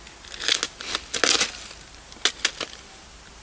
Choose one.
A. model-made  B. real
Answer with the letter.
B